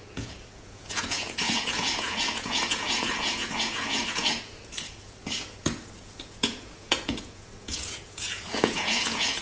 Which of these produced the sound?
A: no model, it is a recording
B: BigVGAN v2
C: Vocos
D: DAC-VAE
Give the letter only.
C